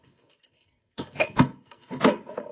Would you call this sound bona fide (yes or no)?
no